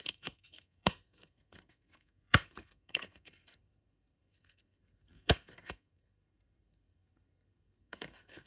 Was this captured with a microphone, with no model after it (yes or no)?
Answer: no